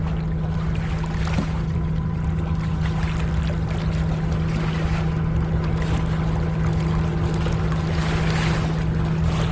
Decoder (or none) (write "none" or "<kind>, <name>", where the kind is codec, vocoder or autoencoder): none